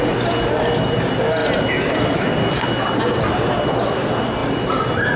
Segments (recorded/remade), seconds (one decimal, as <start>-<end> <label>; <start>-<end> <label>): 0.0-5.2 recorded